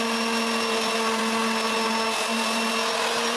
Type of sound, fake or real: real